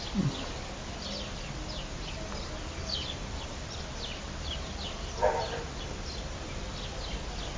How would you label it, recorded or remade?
recorded